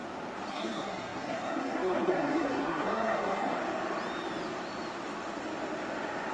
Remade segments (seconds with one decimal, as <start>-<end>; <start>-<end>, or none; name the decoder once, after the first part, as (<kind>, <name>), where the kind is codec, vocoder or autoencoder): 0.5-3.6 (codec, SNAC)